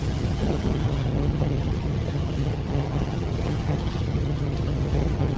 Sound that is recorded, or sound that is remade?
remade